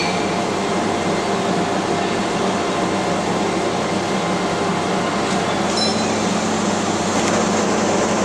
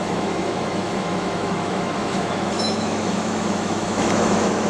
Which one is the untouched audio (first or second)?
first